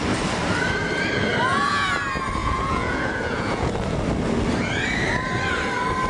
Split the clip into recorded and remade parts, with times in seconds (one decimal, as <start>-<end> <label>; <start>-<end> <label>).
0.0-1.5 recorded; 1.5-2.0 remade; 2.0-2.4 recorded; 2.4-3.7 remade; 3.7-6.1 recorded